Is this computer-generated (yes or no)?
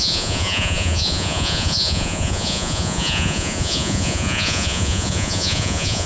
yes